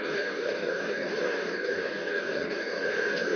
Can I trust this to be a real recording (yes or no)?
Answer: no